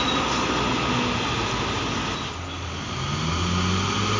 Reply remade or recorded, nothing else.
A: recorded